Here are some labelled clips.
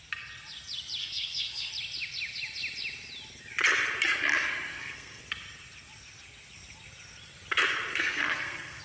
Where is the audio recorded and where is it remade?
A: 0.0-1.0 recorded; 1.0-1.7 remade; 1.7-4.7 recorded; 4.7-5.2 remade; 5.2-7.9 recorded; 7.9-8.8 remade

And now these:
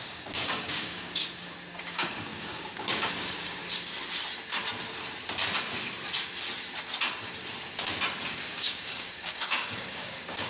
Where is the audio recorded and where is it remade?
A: 0.0-1.2 remade; 1.2-1.8 recorded; 1.8-3.6 remade; 3.6-8.3 recorded; 8.3-10.5 remade

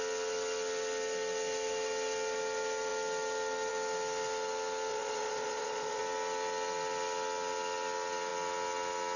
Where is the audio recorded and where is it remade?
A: 0.0-4.9 recorded; 4.9-6.0 remade; 6.0-9.2 recorded

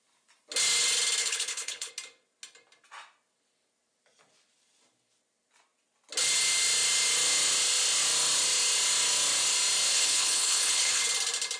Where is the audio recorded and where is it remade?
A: 0.0-1.2 recorded; 1.2-1.9 remade; 1.9-9.9 recorded; 9.9-11.0 remade; 11.0-11.6 recorded

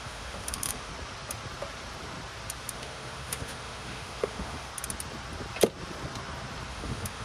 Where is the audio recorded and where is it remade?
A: 0.0-0.9 remade; 0.9-2.6 recorded; 2.6-4.7 remade; 4.7-6.7 recorded; 6.7-7.2 remade

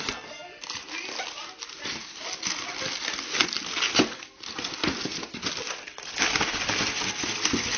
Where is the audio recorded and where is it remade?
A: 0.0-7.8 recorded